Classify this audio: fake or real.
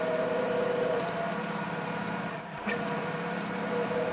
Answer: fake